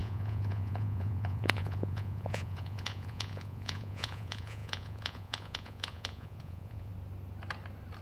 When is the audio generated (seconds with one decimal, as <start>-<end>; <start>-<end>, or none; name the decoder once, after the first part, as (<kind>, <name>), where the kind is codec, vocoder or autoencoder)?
0.0-6.9 (vocoder, Vocos)